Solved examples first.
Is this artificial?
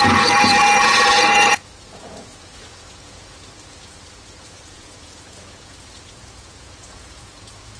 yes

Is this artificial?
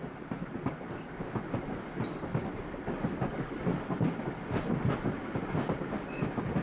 no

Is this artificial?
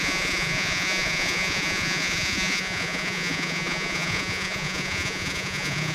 yes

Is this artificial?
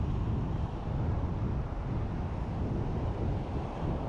no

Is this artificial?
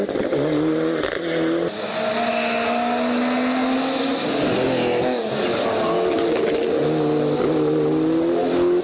no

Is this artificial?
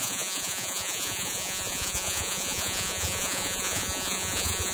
yes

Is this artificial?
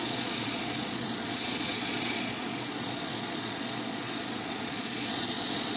yes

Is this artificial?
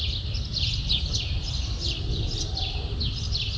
no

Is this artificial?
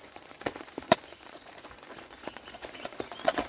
yes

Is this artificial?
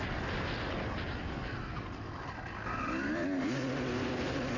no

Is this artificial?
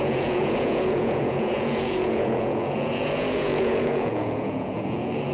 yes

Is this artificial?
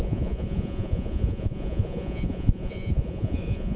yes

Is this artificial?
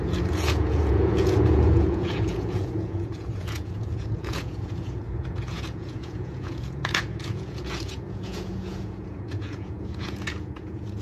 yes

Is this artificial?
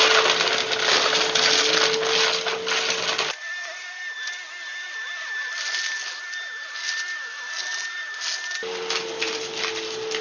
no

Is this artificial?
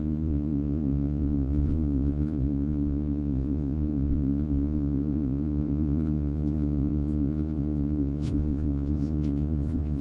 yes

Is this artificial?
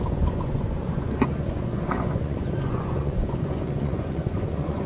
yes